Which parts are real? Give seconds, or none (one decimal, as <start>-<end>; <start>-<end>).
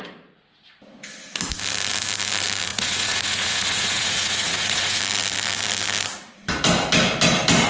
0.0-2.7; 5.0-7.7